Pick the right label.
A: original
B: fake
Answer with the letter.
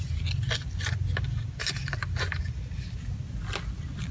A